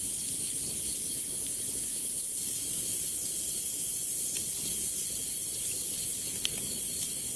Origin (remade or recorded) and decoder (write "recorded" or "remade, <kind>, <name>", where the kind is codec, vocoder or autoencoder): recorded